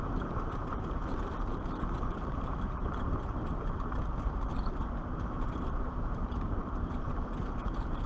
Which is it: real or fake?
fake